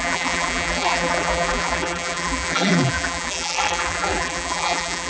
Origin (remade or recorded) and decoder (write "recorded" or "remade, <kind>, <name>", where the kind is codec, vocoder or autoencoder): remade, vocoder, BigVGAN v2